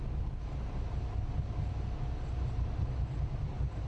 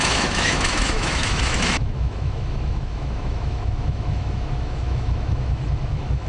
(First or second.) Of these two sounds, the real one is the first